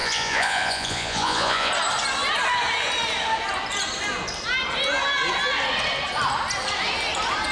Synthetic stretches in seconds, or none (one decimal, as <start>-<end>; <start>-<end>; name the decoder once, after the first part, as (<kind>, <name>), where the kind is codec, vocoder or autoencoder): 0.0-1.7 (vocoder, Vocos)